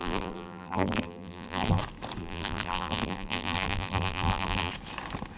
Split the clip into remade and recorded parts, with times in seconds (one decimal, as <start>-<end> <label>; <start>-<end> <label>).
0.0-1.8 remade; 1.8-2.2 recorded; 2.2-4.7 remade; 4.7-5.4 recorded